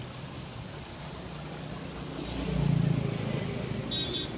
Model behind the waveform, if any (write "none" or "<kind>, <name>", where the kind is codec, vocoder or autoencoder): none